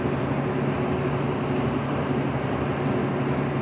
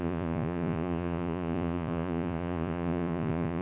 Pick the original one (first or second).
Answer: first